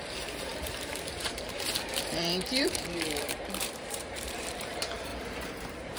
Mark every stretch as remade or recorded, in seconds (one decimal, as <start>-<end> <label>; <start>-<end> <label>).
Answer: 0.0-5.1 remade; 5.1-5.6 recorded; 5.6-6.0 remade